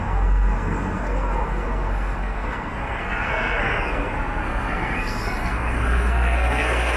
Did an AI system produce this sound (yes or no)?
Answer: yes